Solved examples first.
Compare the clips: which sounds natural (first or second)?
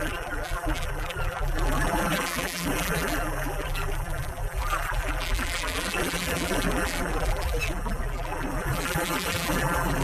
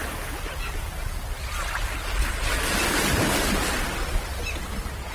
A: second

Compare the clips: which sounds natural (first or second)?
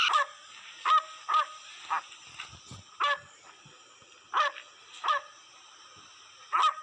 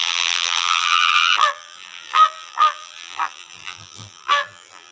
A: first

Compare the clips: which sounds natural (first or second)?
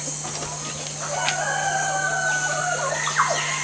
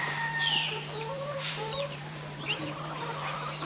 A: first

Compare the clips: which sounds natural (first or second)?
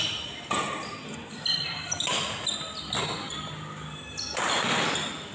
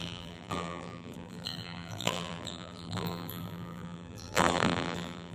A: first